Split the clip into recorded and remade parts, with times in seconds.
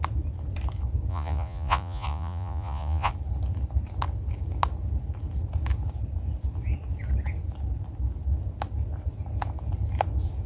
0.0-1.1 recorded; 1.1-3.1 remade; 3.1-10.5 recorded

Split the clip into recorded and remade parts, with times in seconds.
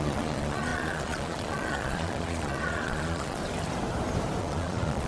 0.0-3.4 remade; 3.4-4.4 recorded; 4.4-5.1 remade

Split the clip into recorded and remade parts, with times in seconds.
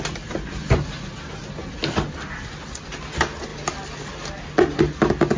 0.0-5.4 recorded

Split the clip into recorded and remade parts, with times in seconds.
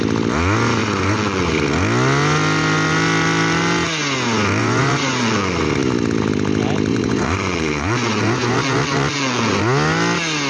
0.0-0.8 recorded; 0.8-1.5 remade; 1.5-4.6 recorded; 4.6-5.6 remade; 5.6-6.9 recorded; 6.9-9.6 remade; 9.6-10.5 recorded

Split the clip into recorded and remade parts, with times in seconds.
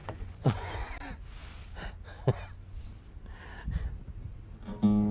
0.0-0.9 remade; 0.9-5.1 recorded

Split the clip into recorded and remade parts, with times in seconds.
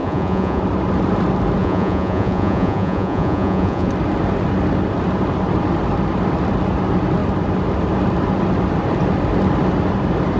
0.0-0.6 remade; 0.6-1.6 recorded; 1.6-3.9 remade; 3.9-10.4 recorded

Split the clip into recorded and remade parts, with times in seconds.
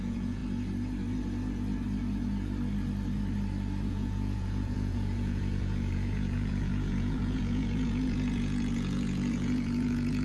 0.0-0.4 remade; 0.4-3.9 recorded; 3.9-10.2 remade